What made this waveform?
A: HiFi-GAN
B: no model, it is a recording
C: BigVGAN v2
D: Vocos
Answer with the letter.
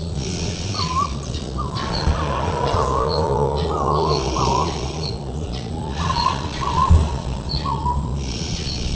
D